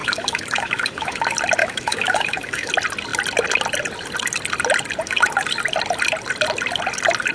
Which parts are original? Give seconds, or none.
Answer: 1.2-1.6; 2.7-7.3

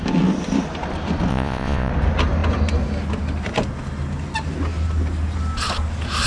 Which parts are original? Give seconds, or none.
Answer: 0.0-1.3; 1.9-6.3

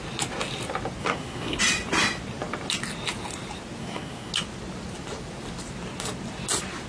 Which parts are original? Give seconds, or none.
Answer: 0.0-1.0; 1.6-3.8; 4.3-6.9

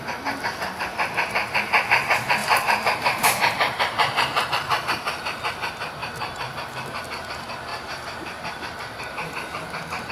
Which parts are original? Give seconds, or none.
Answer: 0.0-2.4; 4.5-6.0; 7.0-7.7